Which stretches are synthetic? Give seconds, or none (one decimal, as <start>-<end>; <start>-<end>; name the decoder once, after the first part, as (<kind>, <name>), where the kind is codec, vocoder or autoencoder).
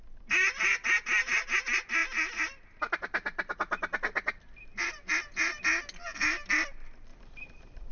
7.1-7.9 (vocoder, BigVGAN v2)